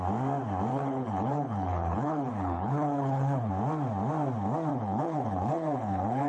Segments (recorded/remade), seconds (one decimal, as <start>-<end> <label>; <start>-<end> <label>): 0.0-0.7 recorded; 0.7-3.5 remade; 3.5-4.7 recorded; 4.7-6.3 remade